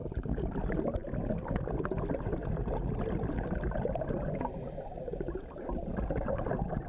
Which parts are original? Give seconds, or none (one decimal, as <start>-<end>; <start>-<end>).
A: 0.0-6.9